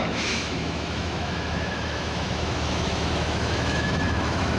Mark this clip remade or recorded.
remade